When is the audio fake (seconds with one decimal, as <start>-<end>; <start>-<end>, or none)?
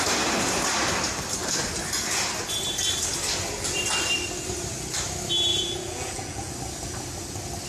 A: 5.5-6.5